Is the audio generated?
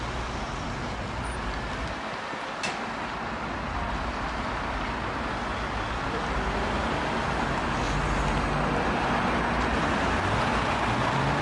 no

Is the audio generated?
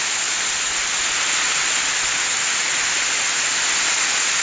no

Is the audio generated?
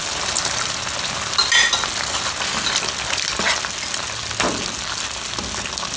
no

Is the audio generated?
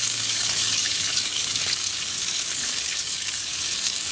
yes